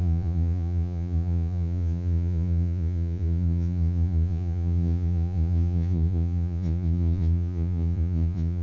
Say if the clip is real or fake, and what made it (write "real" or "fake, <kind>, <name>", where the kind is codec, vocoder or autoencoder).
fake, vocoder, Vocos